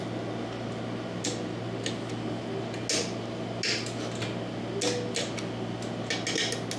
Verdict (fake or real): real